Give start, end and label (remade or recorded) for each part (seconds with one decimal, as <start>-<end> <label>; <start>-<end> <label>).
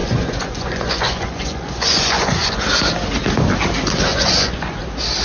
0.0-2.6 remade; 2.6-4.1 recorded; 4.1-4.8 remade; 4.8-5.2 recorded